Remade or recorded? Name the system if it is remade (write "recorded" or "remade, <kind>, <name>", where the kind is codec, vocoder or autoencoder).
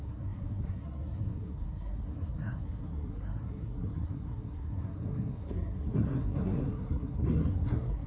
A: remade, codec, SNAC